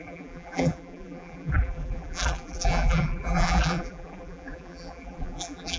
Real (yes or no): no